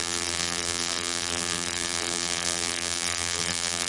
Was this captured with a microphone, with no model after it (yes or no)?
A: no